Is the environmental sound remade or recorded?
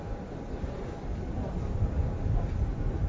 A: recorded